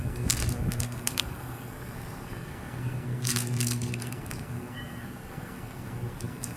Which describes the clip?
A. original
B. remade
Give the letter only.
B